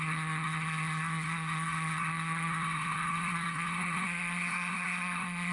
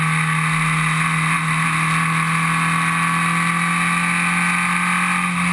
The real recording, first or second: second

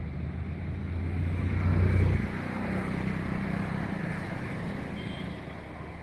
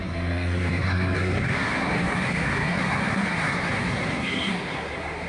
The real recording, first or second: first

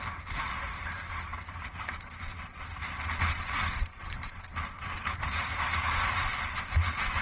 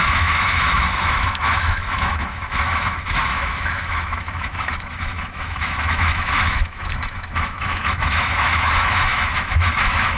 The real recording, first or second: first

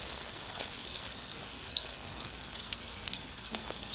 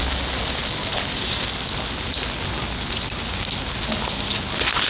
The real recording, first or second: second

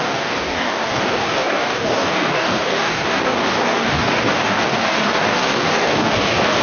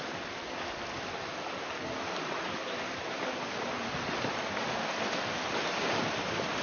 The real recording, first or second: second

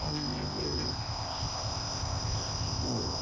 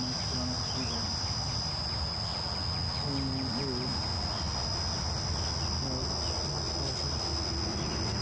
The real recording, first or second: second